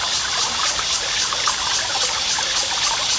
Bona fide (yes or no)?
yes